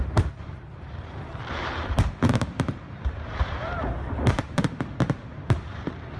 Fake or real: fake